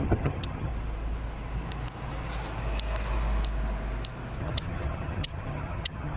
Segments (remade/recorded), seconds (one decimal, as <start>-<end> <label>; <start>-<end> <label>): 0.0-0.7 remade; 0.7-4.4 recorded; 4.4-6.2 remade